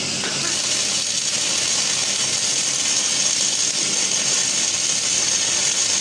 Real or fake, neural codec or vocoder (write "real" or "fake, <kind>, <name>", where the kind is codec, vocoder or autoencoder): real